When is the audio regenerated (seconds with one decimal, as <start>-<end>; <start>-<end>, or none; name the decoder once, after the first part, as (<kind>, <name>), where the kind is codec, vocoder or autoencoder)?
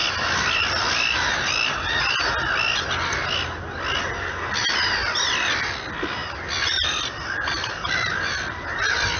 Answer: none